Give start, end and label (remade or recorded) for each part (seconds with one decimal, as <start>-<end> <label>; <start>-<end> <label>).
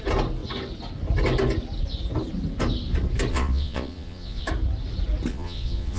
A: 0.0-3.3 recorded; 3.3-4.4 remade; 4.4-5.3 recorded; 5.3-6.0 remade